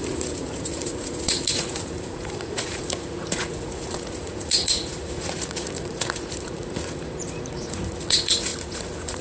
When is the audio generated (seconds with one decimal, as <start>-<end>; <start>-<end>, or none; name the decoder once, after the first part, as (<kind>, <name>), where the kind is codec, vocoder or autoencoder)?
0.0-9.2 (vocoder, Vocos)